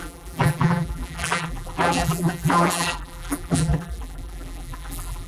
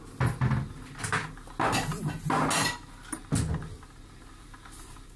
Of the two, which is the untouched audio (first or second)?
second